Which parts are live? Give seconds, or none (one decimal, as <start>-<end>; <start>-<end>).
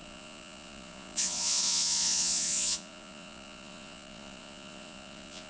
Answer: none